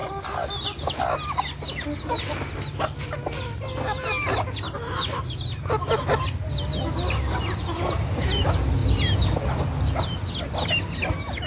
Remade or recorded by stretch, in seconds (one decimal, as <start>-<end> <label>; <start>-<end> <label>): 0.0-11.5 recorded